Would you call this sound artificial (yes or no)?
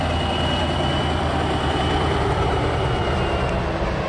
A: yes